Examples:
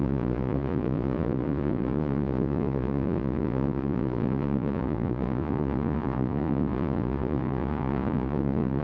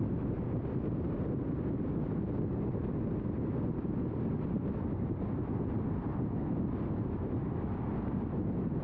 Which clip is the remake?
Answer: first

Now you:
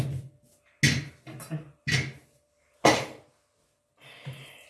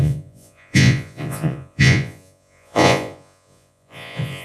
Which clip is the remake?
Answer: second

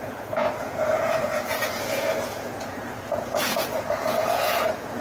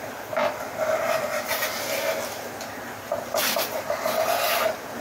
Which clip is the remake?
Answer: first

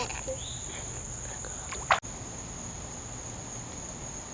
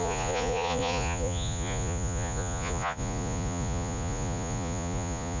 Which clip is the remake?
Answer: second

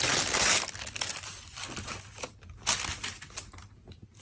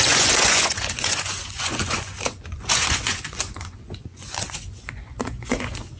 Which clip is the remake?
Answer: second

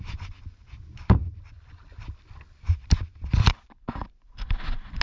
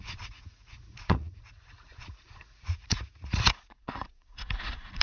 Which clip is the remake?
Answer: second